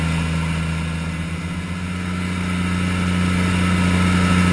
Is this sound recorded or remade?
recorded